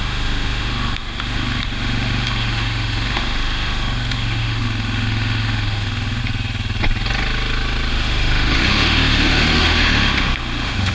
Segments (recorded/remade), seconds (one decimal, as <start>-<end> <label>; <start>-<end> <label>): 0.0-6.2 remade; 6.2-7.9 recorded; 7.9-10.9 remade